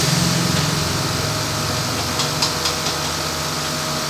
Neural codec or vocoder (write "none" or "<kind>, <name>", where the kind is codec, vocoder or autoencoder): none